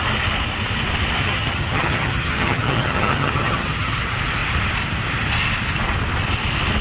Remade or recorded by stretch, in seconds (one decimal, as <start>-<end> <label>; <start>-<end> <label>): 0.0-1.2 recorded; 1.2-4.0 remade; 4.0-6.8 recorded